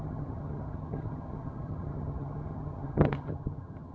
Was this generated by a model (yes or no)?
yes